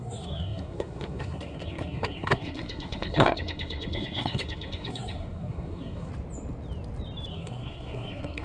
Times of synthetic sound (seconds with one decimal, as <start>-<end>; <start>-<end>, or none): 0.0-6.1; 7.3-8.4